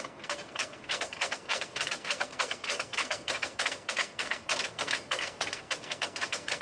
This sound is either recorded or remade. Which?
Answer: remade